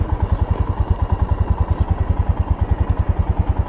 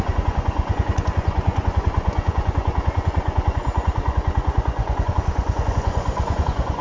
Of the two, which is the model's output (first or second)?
second